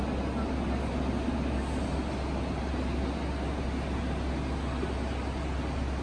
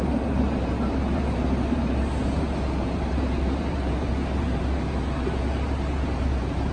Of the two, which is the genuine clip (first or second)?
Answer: first